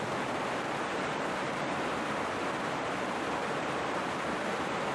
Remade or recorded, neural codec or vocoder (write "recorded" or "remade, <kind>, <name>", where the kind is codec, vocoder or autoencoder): recorded